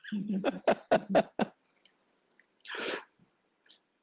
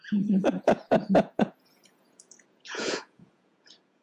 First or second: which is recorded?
first